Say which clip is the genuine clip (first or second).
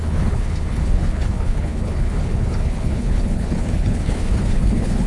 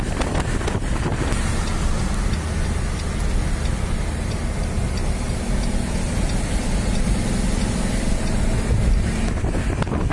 second